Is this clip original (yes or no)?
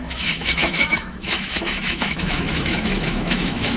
no